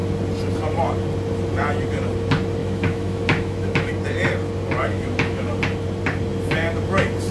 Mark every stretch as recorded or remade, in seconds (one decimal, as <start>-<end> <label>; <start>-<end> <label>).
0.0-2.6 recorded; 2.6-3.9 remade; 3.9-4.9 recorded; 4.9-5.5 remade; 5.5-7.3 recorded